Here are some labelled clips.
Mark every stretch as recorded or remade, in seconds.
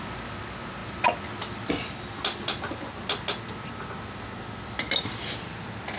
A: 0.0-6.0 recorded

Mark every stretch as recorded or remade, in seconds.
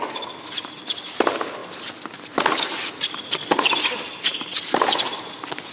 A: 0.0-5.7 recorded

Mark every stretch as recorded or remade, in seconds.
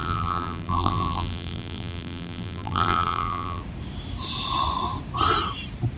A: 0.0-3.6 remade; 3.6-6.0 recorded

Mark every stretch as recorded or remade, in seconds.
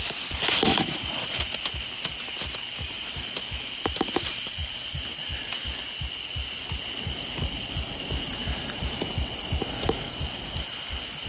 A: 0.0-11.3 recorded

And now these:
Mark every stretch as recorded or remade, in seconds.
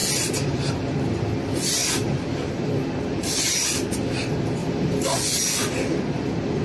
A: 0.0-0.6 remade; 0.6-1.8 recorded; 1.8-2.7 remade; 2.7-4.6 recorded; 4.6-6.0 remade; 6.0-6.6 recorded